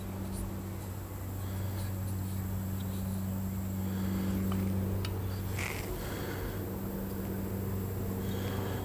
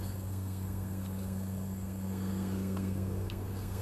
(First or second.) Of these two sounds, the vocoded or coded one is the second